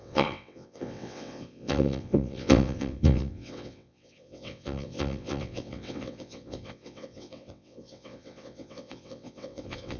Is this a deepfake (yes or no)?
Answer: yes